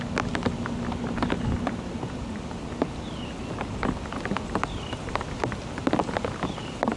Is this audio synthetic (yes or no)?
no